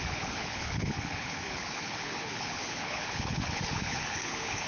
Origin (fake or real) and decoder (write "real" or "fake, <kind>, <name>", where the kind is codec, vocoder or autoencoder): fake, codec, HILCodec